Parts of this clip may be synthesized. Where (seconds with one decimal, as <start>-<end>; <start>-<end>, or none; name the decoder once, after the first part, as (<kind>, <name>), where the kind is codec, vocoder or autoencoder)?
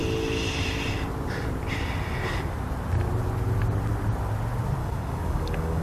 4.8-5.8 (codec, DAC)